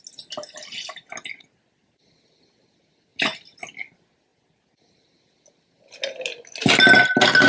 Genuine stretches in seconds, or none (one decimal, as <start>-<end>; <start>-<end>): 0.0-3.1; 3.6-7.5